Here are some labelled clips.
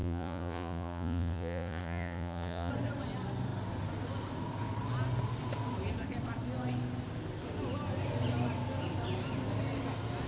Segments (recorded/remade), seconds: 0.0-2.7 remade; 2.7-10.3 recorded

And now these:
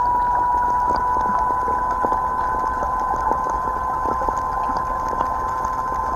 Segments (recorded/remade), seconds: 0.0-6.2 recorded

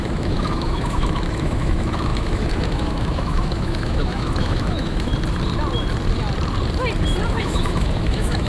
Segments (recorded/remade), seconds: 0.0-5.1 remade; 5.1-7.3 recorded; 7.3-8.5 remade

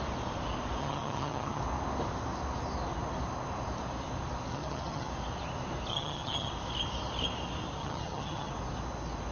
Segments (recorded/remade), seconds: 0.0-0.8 recorded; 0.8-1.6 remade; 1.6-4.5 recorded; 4.5-5.1 remade; 5.1-5.9 recorded; 5.9-6.5 remade; 6.5-7.8 recorded; 7.8-8.5 remade; 8.5-9.3 recorded